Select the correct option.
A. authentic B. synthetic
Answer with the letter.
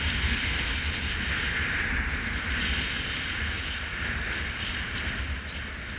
A